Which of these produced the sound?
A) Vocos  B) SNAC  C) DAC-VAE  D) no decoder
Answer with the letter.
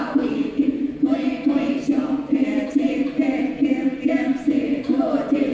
A